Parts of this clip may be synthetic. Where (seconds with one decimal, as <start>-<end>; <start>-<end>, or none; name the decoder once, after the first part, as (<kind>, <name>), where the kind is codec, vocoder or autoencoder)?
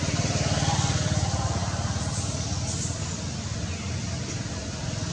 none